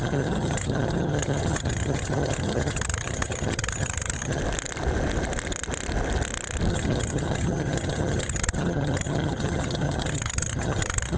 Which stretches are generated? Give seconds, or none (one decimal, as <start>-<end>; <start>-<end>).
0.0-4.4; 6.7-11.2